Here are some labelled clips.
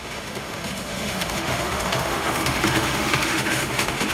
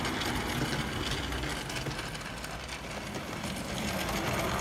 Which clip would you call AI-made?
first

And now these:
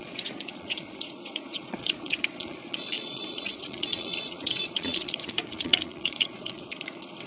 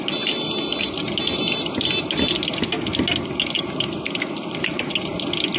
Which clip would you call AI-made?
first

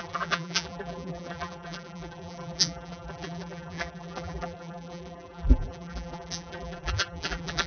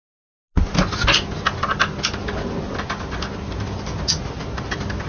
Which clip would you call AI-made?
first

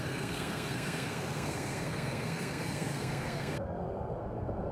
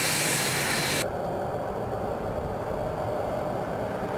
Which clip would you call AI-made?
first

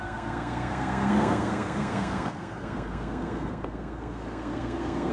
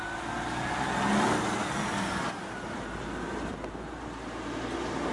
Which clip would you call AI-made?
first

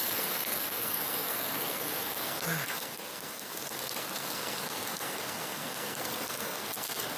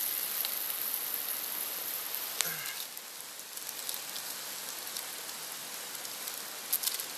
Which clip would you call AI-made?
first